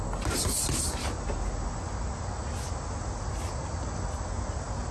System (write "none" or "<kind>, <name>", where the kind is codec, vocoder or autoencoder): none